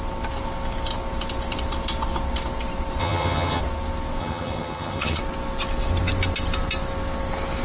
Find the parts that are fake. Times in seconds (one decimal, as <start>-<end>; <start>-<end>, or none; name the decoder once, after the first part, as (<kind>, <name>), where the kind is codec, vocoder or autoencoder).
3.0-3.6 (vocoder, HiFi-GAN); 4.2-5.2